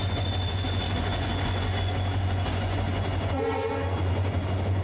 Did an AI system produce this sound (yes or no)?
yes